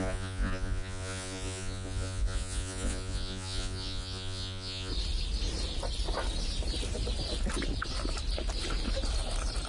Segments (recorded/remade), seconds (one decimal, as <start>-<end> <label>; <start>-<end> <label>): 0.0-4.9 remade; 4.9-9.7 recorded